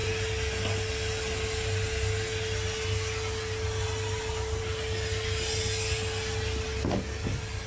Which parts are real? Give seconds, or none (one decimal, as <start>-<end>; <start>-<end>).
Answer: 0.0-7.7